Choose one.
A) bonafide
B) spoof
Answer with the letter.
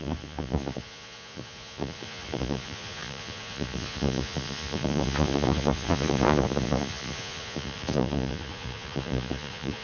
B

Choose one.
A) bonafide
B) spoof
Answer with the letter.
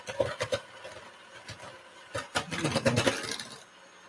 A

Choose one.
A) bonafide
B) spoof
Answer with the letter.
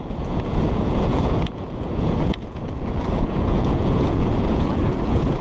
B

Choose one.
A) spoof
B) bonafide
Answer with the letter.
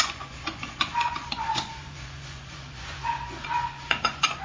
A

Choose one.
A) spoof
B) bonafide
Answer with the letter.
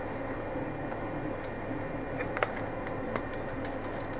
B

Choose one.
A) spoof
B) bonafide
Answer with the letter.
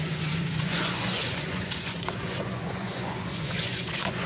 A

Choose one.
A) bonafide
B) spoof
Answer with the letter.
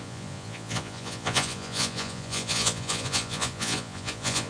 B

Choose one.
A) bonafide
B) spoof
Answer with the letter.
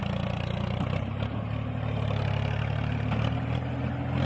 A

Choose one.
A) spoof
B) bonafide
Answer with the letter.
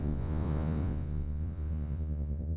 A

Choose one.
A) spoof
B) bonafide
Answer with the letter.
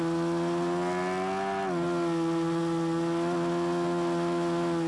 B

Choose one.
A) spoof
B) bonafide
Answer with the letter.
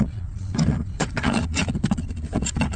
A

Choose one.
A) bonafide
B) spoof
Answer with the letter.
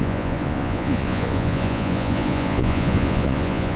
B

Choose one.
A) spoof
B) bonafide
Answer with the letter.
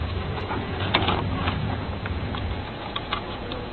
A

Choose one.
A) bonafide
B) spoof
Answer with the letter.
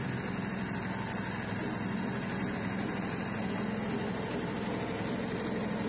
A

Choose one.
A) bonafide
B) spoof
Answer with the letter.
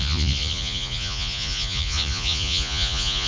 B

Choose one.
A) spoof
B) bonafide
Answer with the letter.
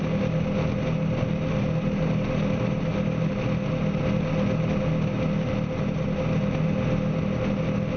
B